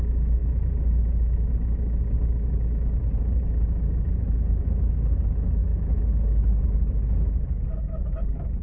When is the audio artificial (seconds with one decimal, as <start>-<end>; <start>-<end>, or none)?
none